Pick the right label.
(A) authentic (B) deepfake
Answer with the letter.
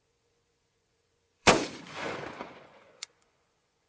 B